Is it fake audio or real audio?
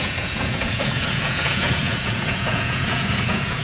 fake